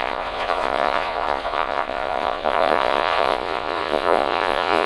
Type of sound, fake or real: fake